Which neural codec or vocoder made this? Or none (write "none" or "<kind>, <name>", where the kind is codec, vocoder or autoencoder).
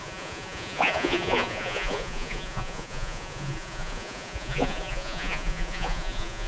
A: vocoder, Vocos